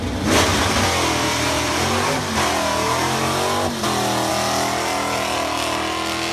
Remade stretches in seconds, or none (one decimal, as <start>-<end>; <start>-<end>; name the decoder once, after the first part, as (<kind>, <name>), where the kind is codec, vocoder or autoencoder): none